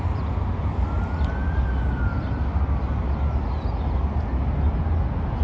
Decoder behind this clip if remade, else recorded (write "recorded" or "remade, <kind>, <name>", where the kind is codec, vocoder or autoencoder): recorded